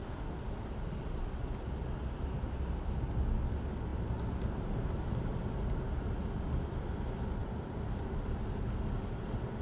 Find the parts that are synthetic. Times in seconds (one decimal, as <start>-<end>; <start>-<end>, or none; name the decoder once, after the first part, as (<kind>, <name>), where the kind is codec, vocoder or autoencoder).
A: none